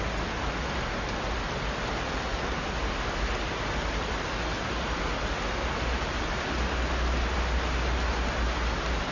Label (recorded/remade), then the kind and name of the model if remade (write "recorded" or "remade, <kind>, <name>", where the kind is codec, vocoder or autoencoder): recorded